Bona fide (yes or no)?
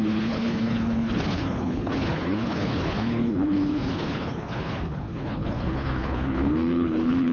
no